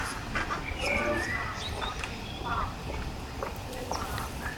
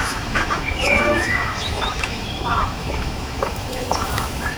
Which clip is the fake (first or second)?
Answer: second